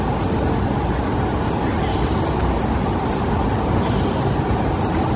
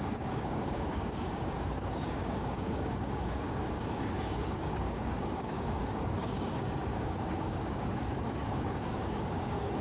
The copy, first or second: second